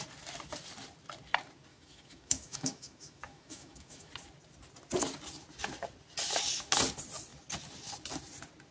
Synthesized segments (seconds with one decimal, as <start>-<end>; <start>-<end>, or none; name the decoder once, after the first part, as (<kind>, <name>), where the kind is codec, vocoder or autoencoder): 1.7-4.1 (autoencoder, DAC-VAE)